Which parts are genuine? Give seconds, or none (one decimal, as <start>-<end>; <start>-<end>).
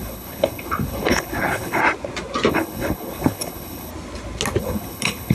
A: 1.8-2.5; 3.9-4.6